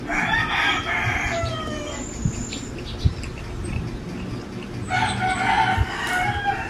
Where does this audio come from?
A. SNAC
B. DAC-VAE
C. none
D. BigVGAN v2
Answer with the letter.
C